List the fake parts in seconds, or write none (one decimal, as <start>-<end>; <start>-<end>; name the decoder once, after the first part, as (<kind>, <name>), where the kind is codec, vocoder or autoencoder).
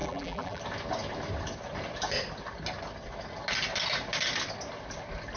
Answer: 0.0-0.6 (vocoder, BigVGAN v2)